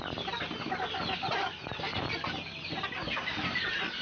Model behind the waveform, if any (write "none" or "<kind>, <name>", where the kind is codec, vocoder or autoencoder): none